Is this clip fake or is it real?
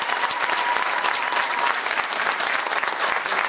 fake